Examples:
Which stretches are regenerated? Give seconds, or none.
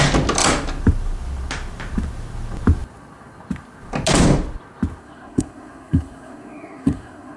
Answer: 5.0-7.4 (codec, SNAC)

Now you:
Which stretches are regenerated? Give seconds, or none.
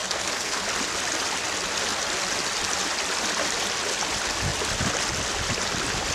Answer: 0.0-0.6 (codec, SNAC)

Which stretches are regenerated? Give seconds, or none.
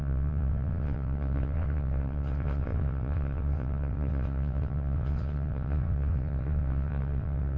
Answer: 0.0-7.6 (vocoder, WaveNeXt)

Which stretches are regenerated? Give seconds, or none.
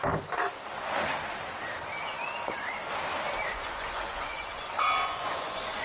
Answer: 3.5-5.8 (vocoder, Vocos)